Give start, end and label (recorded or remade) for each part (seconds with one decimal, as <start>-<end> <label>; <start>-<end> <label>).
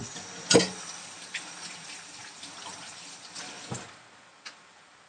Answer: 0.0-5.1 recorded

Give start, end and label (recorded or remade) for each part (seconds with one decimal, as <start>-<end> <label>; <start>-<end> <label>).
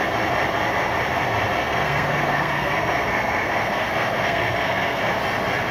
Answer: 0.0-1.6 recorded; 1.6-5.0 remade; 5.0-5.7 recorded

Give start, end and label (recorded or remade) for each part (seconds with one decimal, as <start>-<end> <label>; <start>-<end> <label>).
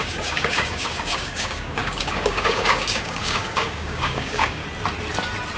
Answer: 0.0-4.6 remade; 4.6-5.6 recorded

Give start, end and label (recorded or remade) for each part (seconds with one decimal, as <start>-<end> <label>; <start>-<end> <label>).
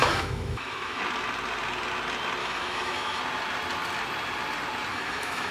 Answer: 0.0-1.0 remade; 1.0-2.4 recorded; 2.4-3.2 remade; 3.2-4.9 recorded; 4.9-5.5 remade